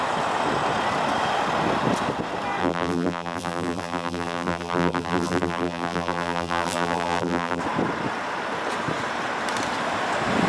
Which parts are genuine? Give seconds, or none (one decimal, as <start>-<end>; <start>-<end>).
0.0-2.6; 7.6-10.5